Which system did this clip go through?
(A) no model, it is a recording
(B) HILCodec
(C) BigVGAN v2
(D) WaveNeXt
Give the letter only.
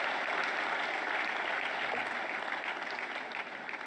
A